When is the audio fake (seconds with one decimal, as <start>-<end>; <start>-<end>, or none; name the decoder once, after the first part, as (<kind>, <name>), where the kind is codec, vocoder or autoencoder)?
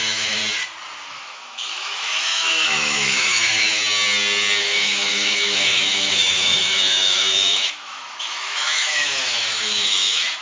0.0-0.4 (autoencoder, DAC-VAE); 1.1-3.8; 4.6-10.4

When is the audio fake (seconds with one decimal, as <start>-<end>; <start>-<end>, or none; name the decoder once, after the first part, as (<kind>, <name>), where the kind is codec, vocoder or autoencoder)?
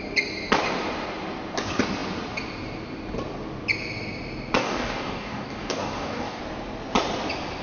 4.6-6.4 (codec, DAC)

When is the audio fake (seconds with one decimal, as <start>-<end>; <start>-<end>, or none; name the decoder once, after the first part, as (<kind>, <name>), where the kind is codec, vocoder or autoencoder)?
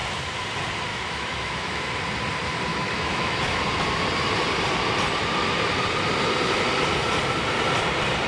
0.9-1.8 (autoencoder, DAC-VAE); 2.7-3.6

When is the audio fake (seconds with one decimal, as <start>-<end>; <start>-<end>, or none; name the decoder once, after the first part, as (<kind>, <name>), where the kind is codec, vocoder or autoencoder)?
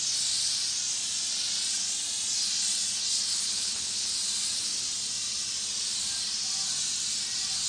3.3-4.1 (codec, HILCodec)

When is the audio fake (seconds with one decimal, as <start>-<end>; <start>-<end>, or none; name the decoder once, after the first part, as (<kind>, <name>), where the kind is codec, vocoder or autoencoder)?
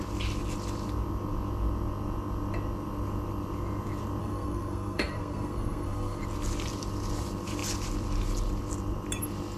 4.2-6.2 (codec, SNAC)